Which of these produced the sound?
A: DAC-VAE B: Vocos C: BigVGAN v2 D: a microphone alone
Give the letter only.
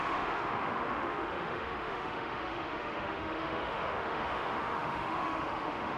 A